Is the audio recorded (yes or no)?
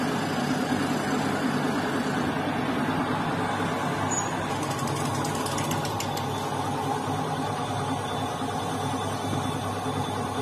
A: yes